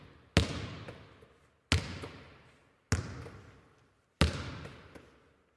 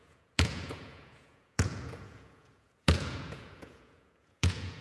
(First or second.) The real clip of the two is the first